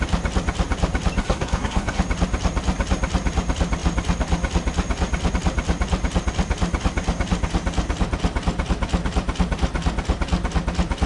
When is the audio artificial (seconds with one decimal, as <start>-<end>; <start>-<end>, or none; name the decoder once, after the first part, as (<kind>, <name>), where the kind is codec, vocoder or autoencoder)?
1.2-2.0 (codec, SNAC)